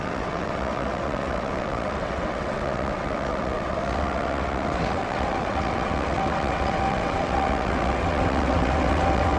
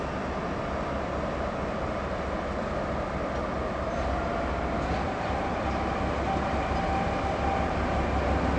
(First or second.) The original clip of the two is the second